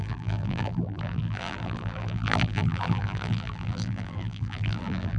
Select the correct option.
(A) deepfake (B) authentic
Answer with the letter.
A